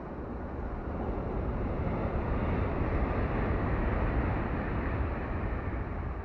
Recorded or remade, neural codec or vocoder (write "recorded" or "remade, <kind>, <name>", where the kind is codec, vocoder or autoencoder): recorded